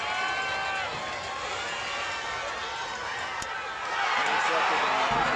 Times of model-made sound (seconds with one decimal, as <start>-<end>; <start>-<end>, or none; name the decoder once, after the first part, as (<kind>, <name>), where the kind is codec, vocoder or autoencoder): none